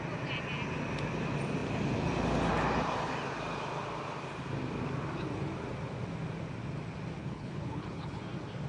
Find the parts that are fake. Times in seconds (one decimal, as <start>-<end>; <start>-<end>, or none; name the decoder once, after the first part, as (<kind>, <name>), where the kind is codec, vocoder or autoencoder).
7.2-8.2 (codec, HILCodec)